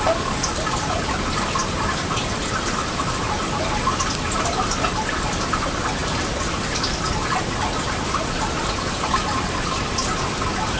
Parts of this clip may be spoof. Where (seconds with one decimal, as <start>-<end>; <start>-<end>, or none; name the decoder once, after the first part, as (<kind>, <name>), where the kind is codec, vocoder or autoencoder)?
6.0-7.6 (vocoder, BigVGAN v2)